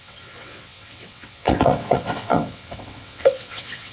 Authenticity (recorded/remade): remade